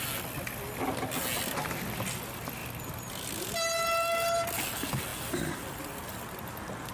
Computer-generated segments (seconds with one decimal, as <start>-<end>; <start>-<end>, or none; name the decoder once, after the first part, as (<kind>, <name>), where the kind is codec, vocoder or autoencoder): none